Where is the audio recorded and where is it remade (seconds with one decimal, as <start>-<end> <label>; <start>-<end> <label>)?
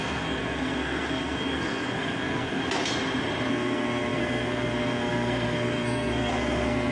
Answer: 0.0-2.6 remade; 2.6-3.5 recorded; 3.5-6.9 remade